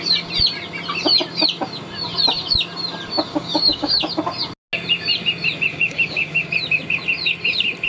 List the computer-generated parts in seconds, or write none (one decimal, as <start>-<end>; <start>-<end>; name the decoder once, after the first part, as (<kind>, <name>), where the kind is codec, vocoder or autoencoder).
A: 3.3-4.1 (codec, DAC); 5.7-6.5